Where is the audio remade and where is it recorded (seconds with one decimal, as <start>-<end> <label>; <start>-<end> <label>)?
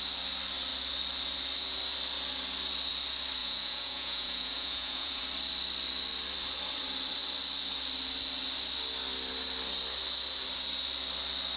0.0-3.4 recorded; 3.4-5.2 remade; 5.2-11.6 recorded